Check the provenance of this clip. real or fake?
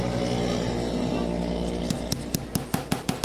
real